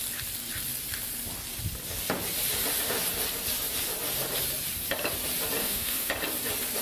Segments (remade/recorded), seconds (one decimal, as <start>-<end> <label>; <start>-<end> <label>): 0.0-5.6 recorded; 5.6-6.1 remade; 6.1-6.8 recorded